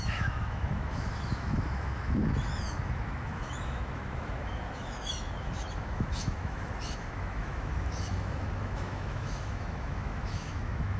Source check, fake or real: fake